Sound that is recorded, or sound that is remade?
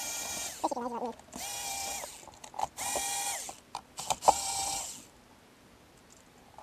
recorded